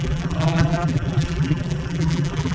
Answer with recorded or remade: remade